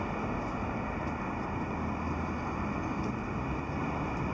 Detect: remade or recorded recorded